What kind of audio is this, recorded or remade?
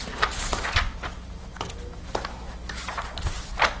recorded